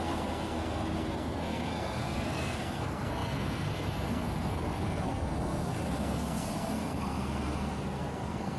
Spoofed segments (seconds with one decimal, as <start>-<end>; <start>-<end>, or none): 0.0-8.6

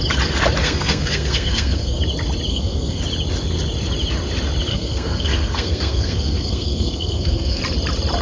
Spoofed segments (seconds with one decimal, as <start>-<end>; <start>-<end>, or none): 0.6-2.0; 2.5-3.0; 4.7-7.6

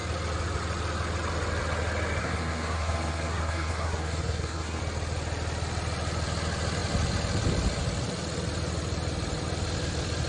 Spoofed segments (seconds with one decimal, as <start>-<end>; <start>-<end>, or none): 2.2-4.8

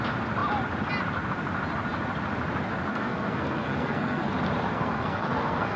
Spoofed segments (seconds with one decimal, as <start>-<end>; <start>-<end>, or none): 2.9-4.3; 4.7-5.8

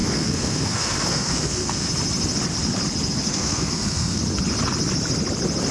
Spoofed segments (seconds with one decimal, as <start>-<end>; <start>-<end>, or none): 0.0-1.9; 3.3-4.2

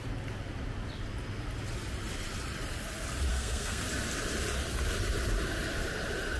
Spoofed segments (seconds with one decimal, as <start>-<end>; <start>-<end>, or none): 3.3-3.8